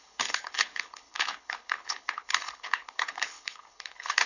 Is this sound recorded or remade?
remade